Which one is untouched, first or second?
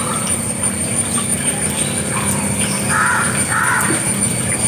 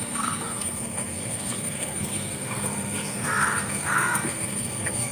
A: first